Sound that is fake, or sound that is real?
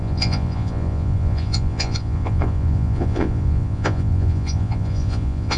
fake